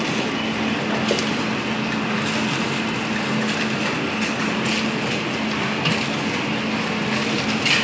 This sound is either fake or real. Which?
real